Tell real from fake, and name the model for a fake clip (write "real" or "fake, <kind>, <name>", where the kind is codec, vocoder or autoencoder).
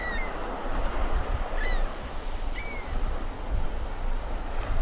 real